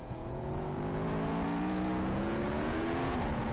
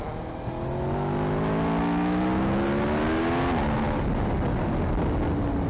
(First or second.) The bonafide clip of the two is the second